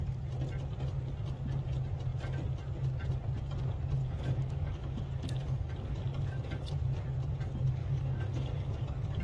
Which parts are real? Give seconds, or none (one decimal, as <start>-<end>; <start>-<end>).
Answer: 0.0-4.0; 6.7-7.8